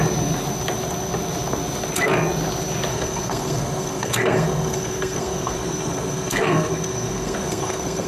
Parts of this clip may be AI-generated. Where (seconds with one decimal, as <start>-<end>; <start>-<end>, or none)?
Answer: 2.9-8.1